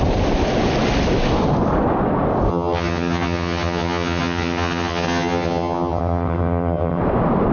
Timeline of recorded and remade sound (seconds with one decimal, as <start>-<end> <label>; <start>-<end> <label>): 0.0-2.5 recorded; 2.5-7.0 remade; 7.0-7.5 recorded